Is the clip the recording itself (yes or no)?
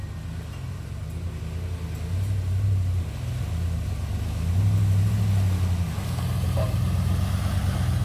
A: yes